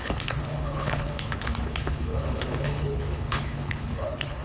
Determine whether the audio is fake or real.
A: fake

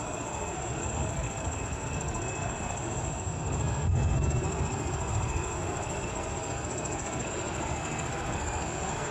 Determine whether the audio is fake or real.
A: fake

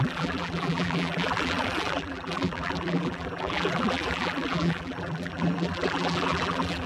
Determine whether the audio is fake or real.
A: fake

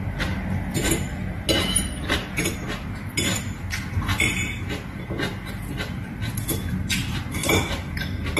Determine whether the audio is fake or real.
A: real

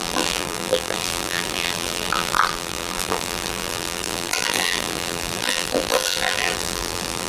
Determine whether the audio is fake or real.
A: fake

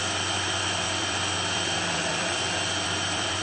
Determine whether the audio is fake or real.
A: fake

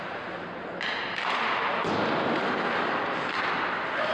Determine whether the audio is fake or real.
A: real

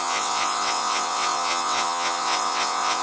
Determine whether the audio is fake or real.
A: fake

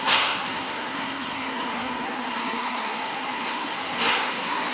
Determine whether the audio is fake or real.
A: fake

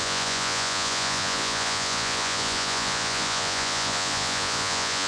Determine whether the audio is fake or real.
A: fake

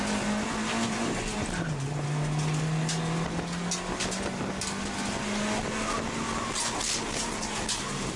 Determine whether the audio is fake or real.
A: real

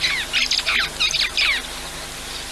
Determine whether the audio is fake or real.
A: real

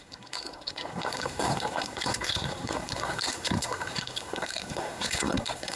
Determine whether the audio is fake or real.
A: fake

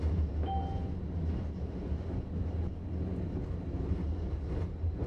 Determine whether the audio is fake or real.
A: real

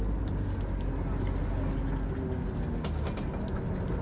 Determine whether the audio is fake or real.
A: real